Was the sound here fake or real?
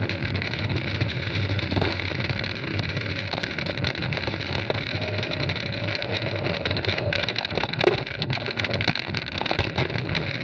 fake